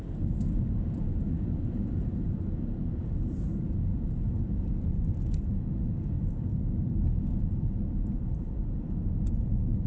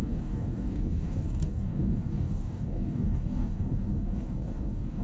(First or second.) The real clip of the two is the first